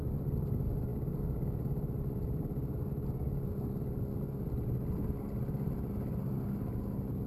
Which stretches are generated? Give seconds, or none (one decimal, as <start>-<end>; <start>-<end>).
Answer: none

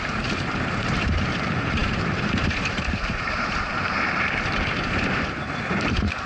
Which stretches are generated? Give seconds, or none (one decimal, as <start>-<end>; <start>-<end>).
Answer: 0.0-6.3

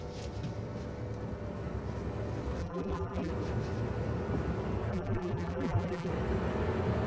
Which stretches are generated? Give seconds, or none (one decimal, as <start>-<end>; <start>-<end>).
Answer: 2.6-3.3; 4.9-6.1

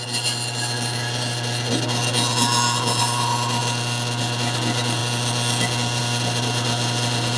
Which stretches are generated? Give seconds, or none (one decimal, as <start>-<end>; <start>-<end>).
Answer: 0.0-2.0; 3.0-3.6; 4.2-5.0; 6.0-7.4

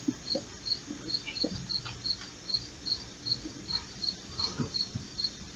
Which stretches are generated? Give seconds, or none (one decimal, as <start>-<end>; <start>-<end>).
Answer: 3.7-5.6

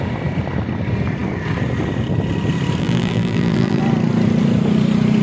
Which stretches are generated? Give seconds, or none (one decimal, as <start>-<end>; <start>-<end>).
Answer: 2.8-3.8

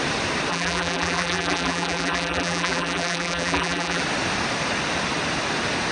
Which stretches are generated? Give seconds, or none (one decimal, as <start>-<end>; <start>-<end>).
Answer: 0.5-4.0